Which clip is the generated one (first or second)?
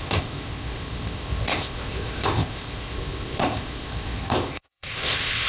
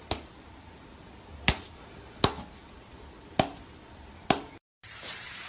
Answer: first